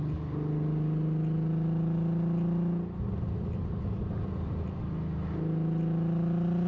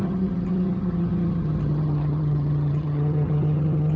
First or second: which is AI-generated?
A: second